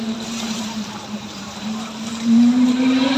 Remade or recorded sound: remade